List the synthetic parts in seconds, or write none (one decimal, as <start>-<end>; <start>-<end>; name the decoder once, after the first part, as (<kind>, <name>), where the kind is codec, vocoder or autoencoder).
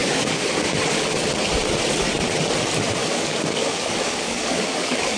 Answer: 0.0-0.7 (codec, DAC); 3.0-5.2